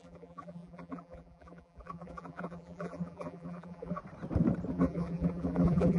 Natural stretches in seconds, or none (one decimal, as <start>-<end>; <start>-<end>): 4.0-4.7